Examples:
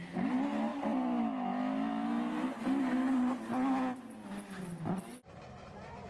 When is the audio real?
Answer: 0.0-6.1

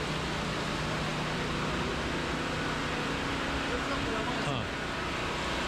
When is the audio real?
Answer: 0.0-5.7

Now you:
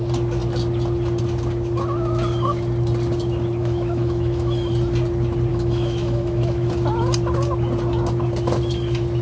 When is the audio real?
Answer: 0.0-3.6; 4.7-5.5; 6.7-9.2